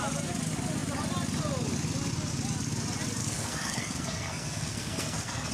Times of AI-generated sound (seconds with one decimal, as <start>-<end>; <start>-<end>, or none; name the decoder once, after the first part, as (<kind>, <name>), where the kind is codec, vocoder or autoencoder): 3.2-5.5 (codec, SNAC)